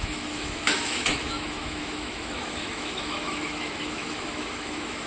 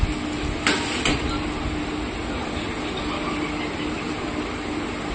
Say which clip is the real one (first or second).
second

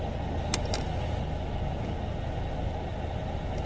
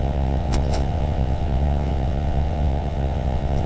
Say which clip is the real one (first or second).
first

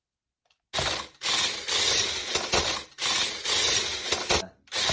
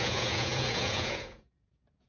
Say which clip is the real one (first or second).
first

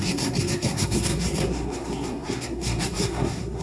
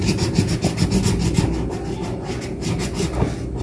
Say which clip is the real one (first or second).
second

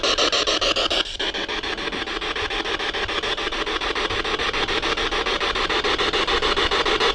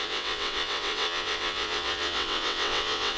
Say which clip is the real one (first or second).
first